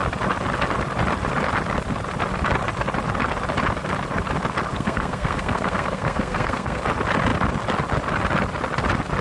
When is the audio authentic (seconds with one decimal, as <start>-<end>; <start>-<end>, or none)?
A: 0.0-4.7; 6.8-9.2